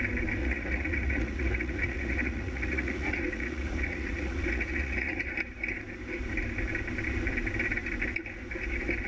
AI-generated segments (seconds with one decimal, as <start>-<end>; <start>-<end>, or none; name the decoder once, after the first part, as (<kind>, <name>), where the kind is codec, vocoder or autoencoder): 0.4-5.3 (vocoder, Vocos)